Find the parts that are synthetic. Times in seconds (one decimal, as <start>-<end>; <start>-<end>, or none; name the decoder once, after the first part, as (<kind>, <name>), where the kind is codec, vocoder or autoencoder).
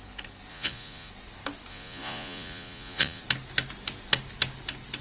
0.5-1.1 (vocoder, Vocos); 1.7-3.2